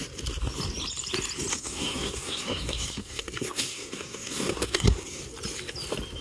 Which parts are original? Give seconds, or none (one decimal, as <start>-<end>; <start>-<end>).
0.0-1.5; 5.2-6.2